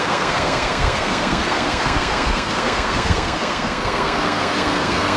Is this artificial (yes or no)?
yes